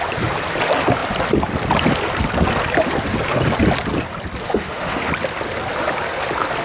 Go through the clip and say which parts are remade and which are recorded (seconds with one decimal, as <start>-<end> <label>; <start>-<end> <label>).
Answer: 0.0-4.4 recorded; 4.4-5.1 remade; 5.1-6.6 recorded